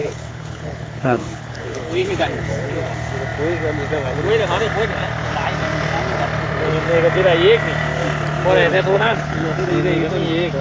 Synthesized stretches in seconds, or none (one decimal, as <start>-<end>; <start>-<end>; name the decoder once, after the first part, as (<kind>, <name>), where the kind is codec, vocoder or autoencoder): 0.0-2.7 (codec, HILCodec); 8.7-9.7